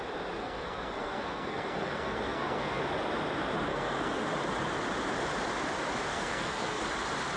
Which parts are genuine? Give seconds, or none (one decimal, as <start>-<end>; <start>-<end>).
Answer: 0.0-0.4; 2.9-3.7; 4.3-6.1; 6.8-7.4